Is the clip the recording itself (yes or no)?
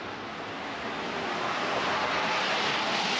yes